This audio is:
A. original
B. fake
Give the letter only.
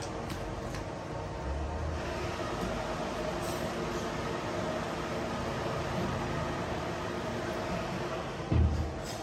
A